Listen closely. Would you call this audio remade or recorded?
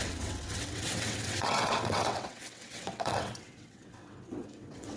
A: remade